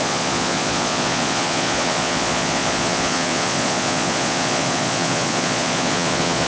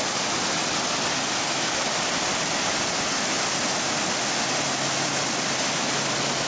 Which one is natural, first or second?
second